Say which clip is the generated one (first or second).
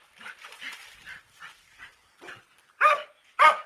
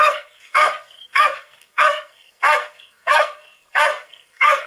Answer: second